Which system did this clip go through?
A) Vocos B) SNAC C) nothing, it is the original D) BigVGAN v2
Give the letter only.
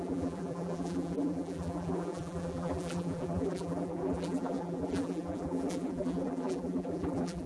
D